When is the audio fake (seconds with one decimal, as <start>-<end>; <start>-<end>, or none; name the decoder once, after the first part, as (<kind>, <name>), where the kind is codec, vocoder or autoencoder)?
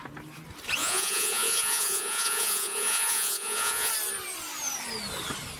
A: 0.8-3.9 (vocoder, Vocos)